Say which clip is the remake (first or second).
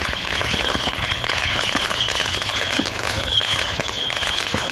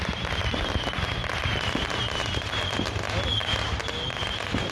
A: first